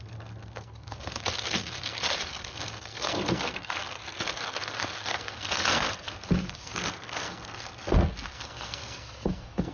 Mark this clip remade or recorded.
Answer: remade